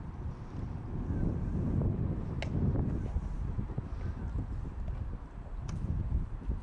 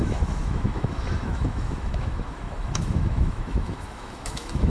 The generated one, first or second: second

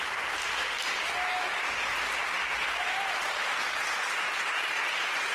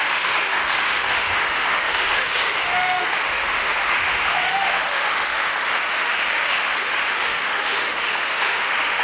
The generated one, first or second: second